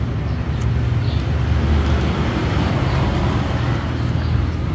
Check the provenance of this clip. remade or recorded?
recorded